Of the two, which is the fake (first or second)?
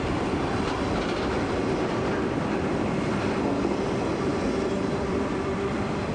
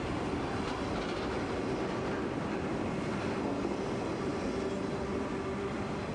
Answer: first